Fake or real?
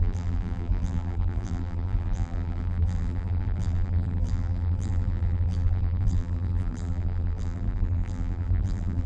fake